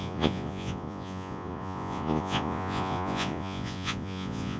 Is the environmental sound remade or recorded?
remade